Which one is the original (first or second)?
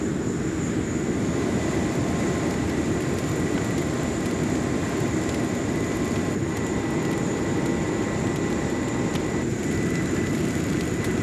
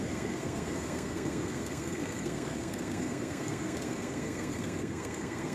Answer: first